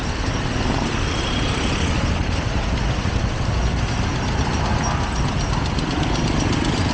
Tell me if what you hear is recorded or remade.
recorded